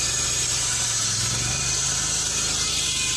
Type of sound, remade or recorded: remade